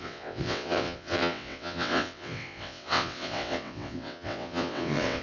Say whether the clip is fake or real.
fake